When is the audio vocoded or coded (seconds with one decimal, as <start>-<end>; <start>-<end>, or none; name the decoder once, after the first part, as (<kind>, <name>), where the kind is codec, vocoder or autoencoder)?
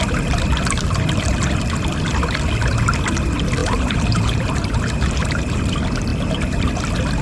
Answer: 3.6-5.6 (vocoder, BigVGAN v2); 6.1-6.8